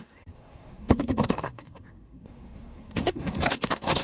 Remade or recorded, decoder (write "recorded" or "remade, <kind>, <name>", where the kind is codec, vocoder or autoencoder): remade, codec, SNAC